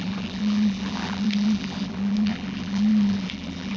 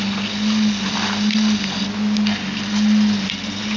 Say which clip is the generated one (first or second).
first